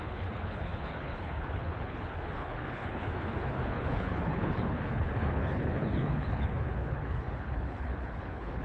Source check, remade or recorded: remade